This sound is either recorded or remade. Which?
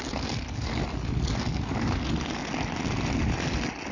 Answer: recorded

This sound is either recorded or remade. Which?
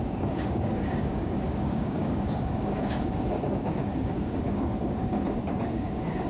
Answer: remade